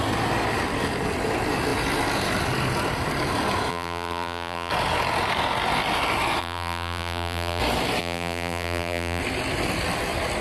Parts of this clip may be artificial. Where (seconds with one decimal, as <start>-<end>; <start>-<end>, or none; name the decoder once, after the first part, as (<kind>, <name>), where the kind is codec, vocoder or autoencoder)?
3.7-4.7 (vocoder, BigVGAN v2); 6.4-7.6; 8.0-9.2